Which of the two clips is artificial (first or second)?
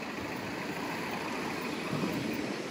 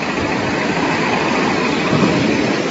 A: first